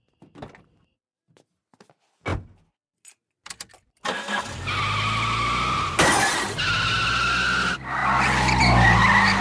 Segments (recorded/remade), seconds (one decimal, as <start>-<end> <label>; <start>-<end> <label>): 0.0-9.4 recorded